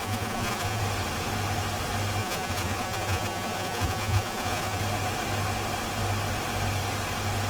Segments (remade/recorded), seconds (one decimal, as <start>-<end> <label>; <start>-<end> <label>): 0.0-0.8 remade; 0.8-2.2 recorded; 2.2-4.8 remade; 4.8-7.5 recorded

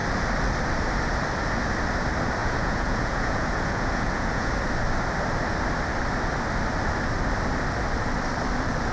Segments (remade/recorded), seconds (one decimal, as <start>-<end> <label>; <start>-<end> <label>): 0.0-2.4 recorded; 2.4-4.5 remade; 4.5-8.9 recorded

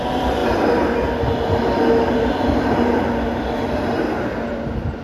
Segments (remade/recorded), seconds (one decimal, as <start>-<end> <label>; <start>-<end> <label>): 0.0-5.0 recorded